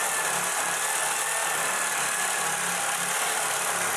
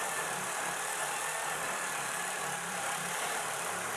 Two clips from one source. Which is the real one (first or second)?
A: first